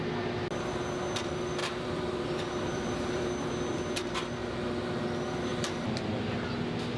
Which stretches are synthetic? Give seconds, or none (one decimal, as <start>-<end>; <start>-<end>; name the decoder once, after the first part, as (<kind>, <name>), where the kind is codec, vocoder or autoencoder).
1.6-3.5 (vocoder, BigVGAN v2); 5.5-6.2